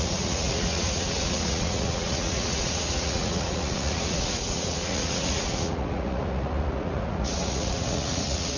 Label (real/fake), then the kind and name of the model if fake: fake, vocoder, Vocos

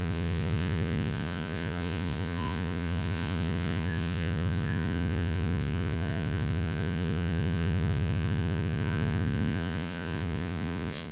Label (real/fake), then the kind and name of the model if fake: fake, vocoder, Vocos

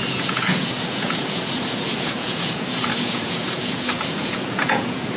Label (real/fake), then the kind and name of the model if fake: fake, vocoder, Vocos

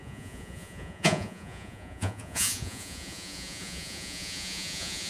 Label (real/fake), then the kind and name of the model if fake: fake, vocoder, Vocos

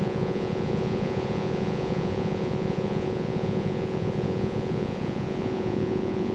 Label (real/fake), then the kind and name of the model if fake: fake, vocoder, Vocos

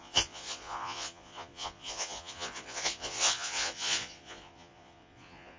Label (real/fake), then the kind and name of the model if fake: fake, vocoder, Vocos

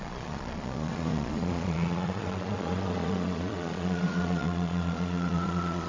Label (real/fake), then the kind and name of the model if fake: fake, vocoder, Vocos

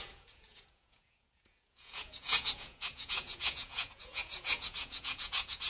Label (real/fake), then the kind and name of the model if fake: fake, vocoder, Vocos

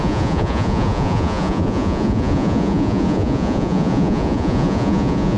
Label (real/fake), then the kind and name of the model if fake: fake, vocoder, Vocos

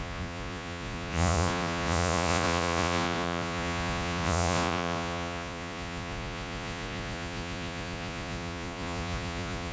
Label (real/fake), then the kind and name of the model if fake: fake, vocoder, Vocos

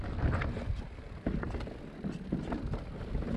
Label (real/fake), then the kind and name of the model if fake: real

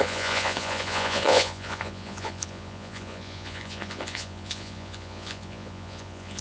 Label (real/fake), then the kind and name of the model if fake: fake, vocoder, Vocos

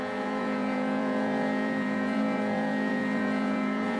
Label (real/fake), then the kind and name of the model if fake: fake, vocoder, Vocos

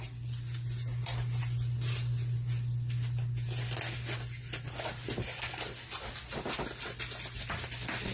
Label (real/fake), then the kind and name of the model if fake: real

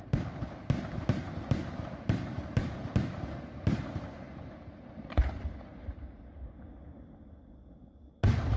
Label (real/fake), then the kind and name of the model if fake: real